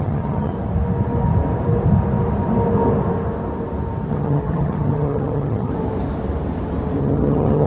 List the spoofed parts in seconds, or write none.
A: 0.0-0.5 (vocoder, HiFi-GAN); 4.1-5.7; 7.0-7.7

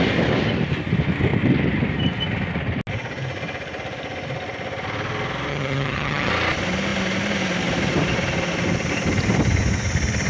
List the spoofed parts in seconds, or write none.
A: 5.5-6.3 (vocoder, HiFi-GAN)

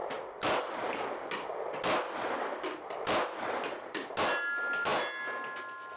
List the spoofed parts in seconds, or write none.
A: none